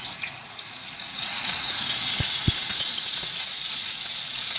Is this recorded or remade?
remade